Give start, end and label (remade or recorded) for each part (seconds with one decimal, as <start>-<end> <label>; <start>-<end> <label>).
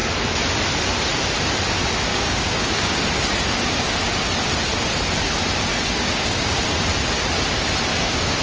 0.0-2.1 recorded; 2.1-2.9 remade; 2.9-5.7 recorded; 5.7-6.6 remade; 6.6-7.9 recorded; 7.9-8.4 remade